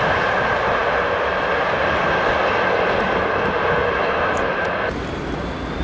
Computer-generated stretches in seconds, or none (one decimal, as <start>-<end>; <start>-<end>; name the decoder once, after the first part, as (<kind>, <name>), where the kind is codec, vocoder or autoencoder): none